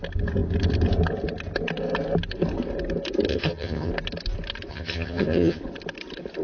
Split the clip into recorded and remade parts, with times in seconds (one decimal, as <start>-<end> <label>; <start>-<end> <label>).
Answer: 0.0-3.3 recorded; 3.3-3.9 remade; 3.9-4.7 recorded; 4.7-5.6 remade; 5.6-6.4 recorded